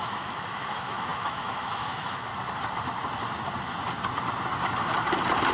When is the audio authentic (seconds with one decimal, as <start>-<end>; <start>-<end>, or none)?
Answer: 2.3-5.5